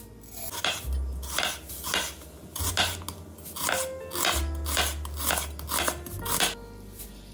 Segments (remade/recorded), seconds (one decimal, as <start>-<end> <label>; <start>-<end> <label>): 0.0-7.3 recorded